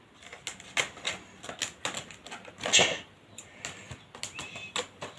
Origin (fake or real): real